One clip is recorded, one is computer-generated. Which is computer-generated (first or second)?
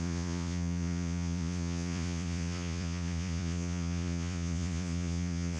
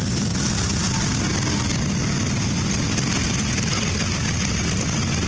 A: first